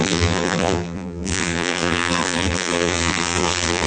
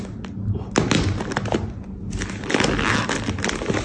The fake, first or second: first